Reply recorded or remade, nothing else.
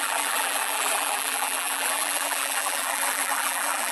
remade